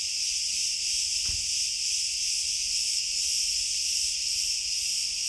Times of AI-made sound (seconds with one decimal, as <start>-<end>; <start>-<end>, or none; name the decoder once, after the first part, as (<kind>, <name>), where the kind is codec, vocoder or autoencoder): none

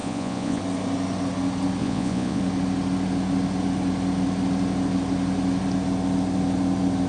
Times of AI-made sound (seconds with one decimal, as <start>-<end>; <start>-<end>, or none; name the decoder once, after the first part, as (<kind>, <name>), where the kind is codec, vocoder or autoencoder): 0.0-0.6 (vocoder, Vocos); 1.8-2.4